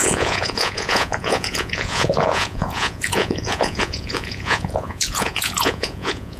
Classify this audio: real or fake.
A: fake